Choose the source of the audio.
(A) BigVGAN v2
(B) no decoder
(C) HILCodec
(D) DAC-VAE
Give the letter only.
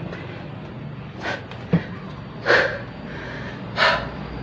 B